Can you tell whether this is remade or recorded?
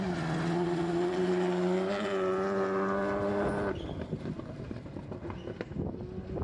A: recorded